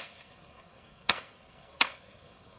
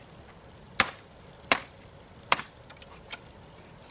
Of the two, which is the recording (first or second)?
second